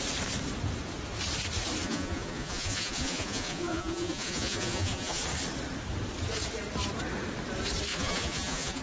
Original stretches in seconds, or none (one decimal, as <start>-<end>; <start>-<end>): 0.0-1.8; 5.2-7.9